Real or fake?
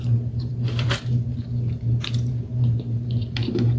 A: fake